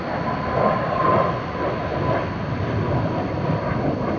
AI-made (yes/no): no